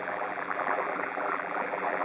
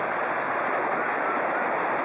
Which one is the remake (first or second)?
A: first